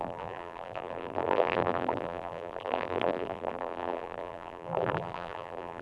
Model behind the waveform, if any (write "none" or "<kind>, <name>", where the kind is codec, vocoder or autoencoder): vocoder, BigVGAN v2